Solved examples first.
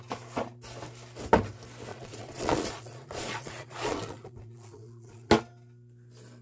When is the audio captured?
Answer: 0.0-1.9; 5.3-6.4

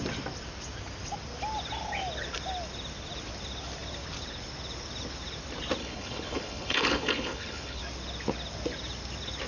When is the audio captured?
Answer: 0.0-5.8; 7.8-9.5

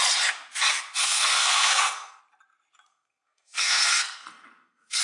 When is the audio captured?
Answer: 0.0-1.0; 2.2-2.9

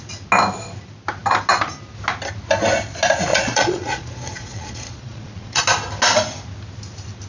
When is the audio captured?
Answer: 0.0-3.3; 5.6-7.3